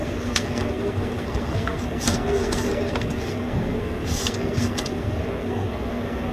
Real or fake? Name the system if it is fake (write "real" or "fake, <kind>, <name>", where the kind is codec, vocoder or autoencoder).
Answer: fake, codec, SNAC